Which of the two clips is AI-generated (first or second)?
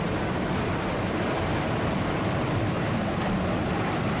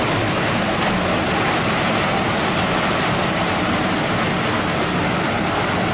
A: first